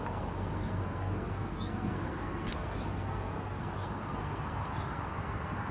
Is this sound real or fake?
fake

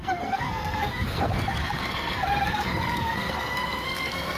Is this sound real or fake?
fake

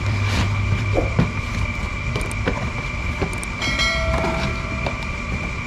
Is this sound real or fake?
fake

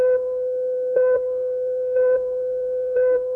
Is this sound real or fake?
fake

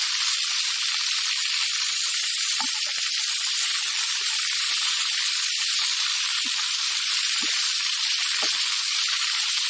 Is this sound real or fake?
fake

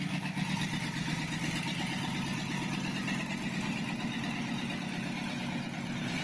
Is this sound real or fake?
real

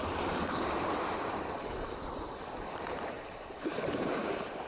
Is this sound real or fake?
fake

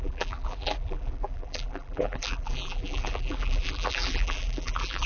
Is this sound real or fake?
fake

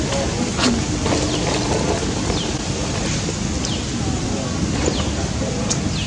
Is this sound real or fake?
real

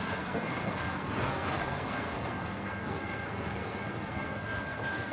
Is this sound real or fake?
fake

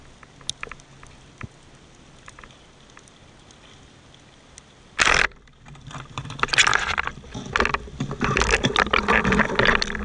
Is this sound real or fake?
real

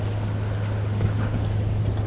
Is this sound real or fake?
real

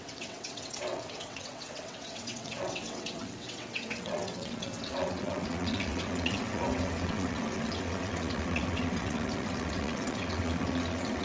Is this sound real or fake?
fake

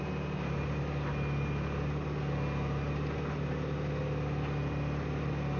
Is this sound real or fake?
real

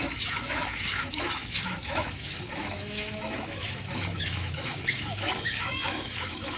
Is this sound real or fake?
fake